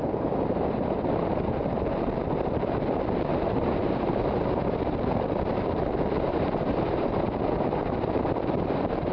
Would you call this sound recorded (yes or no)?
no